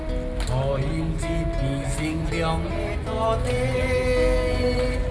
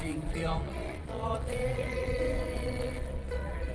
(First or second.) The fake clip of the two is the second